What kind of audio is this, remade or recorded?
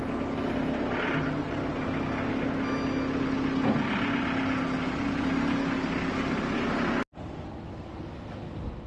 recorded